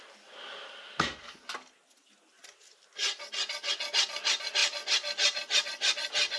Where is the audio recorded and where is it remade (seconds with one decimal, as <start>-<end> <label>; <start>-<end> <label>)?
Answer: 0.0-6.4 recorded